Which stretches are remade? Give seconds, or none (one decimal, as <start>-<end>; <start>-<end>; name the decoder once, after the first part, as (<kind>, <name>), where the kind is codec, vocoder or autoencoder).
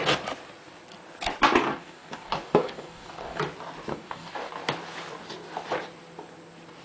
1.7-3.4 (codec, DAC); 3.9-4.5